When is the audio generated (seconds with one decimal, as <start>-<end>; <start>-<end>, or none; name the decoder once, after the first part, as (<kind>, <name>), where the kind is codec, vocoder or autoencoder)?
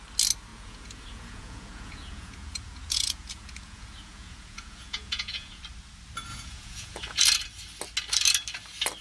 0.5-5.6 (vocoder, Vocos); 6.3-7.2